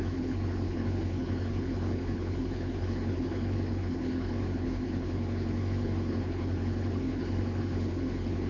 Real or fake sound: fake